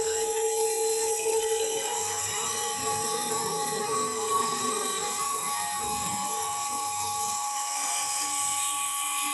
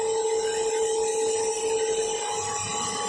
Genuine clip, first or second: second